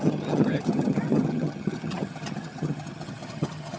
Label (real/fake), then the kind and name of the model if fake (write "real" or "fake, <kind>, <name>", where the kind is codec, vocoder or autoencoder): fake, vocoder, HiFi-GAN